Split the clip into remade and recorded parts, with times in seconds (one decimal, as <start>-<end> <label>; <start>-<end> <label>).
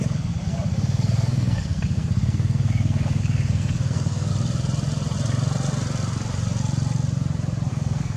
0.0-4.3 remade; 4.3-7.7 recorded; 7.7-8.2 remade